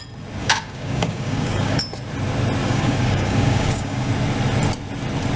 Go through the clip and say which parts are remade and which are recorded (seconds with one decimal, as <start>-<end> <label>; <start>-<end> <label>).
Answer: 0.0-0.4 recorded; 0.4-1.8 remade; 1.8-2.6 recorded; 2.6-4.1 remade; 4.1-5.4 recorded